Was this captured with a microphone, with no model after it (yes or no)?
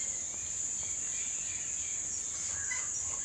yes